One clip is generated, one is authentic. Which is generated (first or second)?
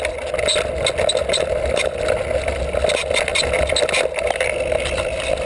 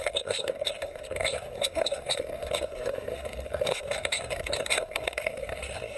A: second